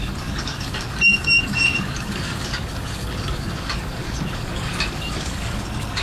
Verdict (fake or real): fake